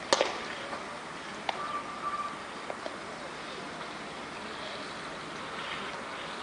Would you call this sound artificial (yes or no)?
no